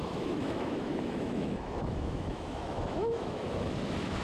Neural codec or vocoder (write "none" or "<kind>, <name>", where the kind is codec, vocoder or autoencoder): autoencoder, DAC-VAE